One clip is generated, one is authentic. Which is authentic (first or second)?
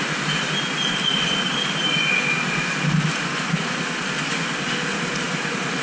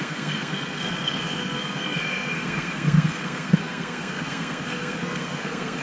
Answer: first